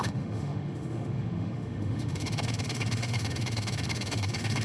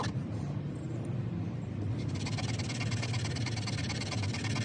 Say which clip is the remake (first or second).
first